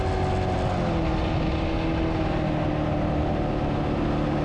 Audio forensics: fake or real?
real